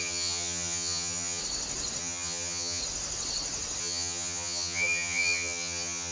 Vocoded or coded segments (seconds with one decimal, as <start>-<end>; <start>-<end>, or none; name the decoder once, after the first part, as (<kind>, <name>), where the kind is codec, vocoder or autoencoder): 0.0-1.4 (vocoder, HiFi-GAN); 2.0-2.8; 3.8-6.1